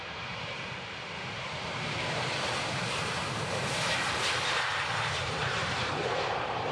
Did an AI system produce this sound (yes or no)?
yes